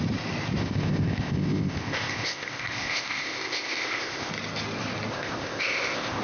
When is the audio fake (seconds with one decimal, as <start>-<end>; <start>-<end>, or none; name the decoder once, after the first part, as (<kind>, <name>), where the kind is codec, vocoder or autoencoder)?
0.6-4.3 (codec, ZipCodec); 5.1-6.2